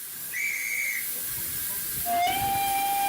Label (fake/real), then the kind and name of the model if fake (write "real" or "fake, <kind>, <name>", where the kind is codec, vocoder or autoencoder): real